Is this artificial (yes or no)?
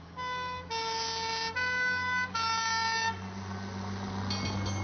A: no